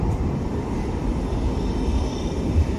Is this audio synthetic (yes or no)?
no